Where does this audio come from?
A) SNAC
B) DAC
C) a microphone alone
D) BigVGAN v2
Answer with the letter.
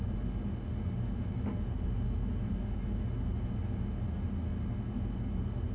C